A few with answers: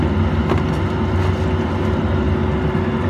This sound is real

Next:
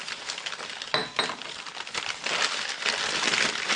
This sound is real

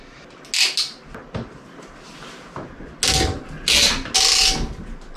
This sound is real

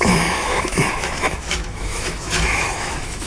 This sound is fake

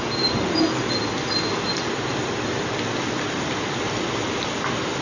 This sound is real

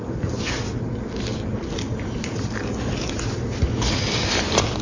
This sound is real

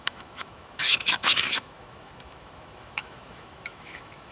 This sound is fake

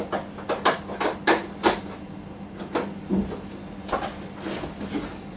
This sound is real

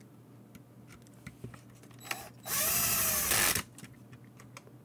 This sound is real